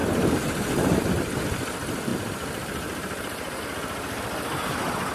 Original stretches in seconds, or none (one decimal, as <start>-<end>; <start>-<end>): 0.0-2.1; 3.6-5.1